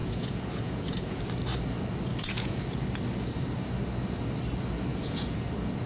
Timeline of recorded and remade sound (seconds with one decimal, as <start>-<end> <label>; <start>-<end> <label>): 0.0-1.2 remade; 1.2-2.1 recorded; 2.1-2.6 remade; 2.6-4.9 recorded; 4.9-5.5 remade; 5.5-5.9 recorded